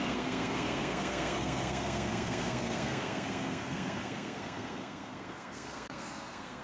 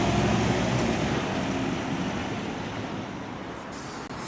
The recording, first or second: second